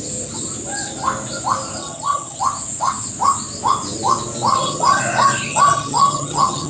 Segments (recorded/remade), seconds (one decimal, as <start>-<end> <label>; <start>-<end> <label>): 0.0-1.8 recorded; 1.8-2.4 remade; 2.4-4.5 recorded; 4.5-5.0 remade; 5.0-5.5 recorded; 5.5-6.7 remade